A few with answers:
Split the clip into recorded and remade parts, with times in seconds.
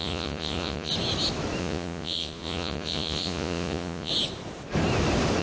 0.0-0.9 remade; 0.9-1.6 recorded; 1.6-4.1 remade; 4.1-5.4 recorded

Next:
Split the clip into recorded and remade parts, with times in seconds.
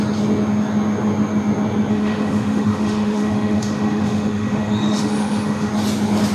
0.0-1.9 recorded; 1.9-5.7 remade; 5.7-6.3 recorded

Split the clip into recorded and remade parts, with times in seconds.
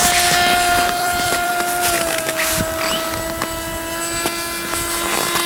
0.0-1.0 recorded; 1.0-1.5 remade; 1.5-5.5 recorded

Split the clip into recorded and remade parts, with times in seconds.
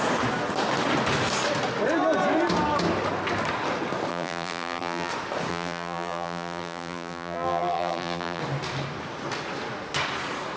0.0-4.1 recorded; 4.1-5.1 remade; 5.1-5.5 recorded; 5.5-8.4 remade; 8.4-10.6 recorded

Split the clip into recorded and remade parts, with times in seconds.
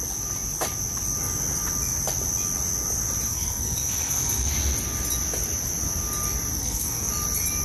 0.0-3.3 recorded; 3.3-4.5 remade; 4.5-6.5 recorded; 6.5-7.1 remade; 7.1-7.6 recorded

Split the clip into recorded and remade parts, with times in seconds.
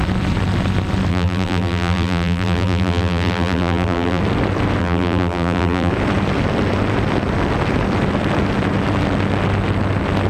0.0-1.1 recorded; 1.1-4.2 remade; 4.2-4.8 recorded; 4.8-5.9 remade; 5.9-10.3 recorded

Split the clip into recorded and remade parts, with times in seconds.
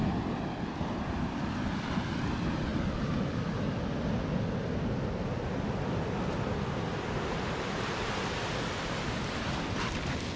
0.0-10.4 recorded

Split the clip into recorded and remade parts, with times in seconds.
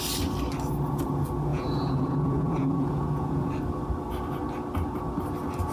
0.0-1.5 recorded; 1.5-3.5 remade; 3.5-5.7 recorded